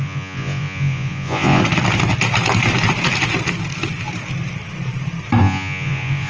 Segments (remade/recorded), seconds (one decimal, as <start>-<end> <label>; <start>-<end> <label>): 0.0-1.6 remade; 1.6-5.4 recorded; 5.4-6.3 remade